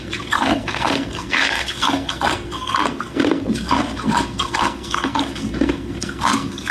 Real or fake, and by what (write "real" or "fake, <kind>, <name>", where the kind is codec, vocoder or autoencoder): fake, codec, SNAC